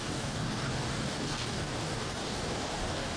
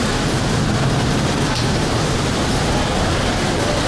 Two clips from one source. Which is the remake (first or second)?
first